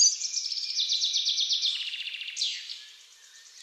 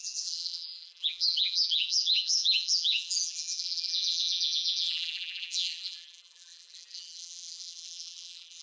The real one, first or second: first